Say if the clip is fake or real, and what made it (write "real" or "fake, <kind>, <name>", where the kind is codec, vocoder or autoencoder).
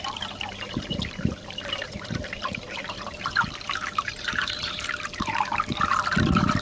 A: fake, vocoder, BigVGAN v2